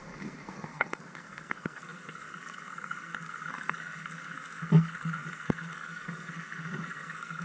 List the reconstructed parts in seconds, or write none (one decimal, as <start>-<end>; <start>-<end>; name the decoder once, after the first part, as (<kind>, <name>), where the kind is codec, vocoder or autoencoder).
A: 0.0-7.4 (codec, SNAC)